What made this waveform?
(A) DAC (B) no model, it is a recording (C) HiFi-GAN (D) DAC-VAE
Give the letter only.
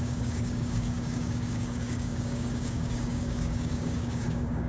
A